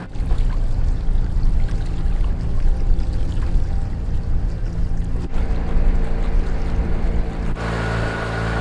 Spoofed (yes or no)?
no